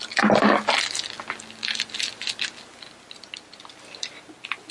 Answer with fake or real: real